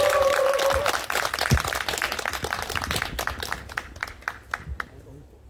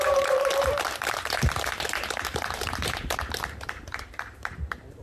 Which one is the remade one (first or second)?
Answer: second